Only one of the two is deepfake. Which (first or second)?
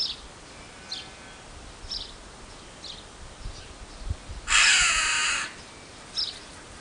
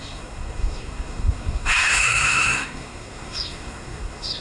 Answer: second